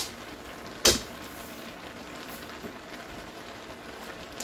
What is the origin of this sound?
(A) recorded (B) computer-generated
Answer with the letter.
A